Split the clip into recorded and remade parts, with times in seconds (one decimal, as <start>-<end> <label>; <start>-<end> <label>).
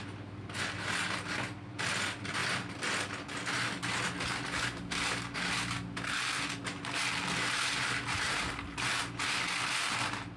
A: 0.0-10.4 recorded